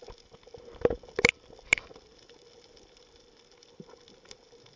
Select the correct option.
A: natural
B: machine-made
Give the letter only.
A